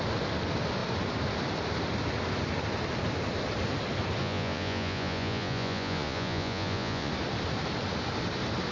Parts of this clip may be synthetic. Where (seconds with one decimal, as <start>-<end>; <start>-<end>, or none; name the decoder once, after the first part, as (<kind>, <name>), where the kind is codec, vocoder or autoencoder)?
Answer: 4.2-7.1 (vocoder, Vocos)